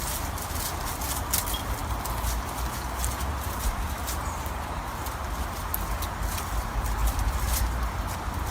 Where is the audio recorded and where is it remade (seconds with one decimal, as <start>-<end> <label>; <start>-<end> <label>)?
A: 0.0-7.0 recorded; 7.0-7.6 remade; 7.6-8.5 recorded